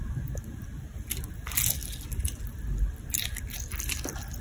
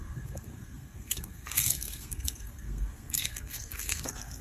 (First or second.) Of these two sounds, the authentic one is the first